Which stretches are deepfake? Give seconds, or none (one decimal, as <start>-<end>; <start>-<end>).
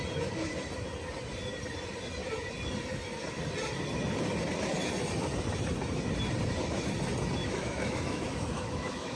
7.4-9.2